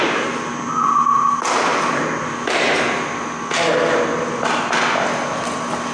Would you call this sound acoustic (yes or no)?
yes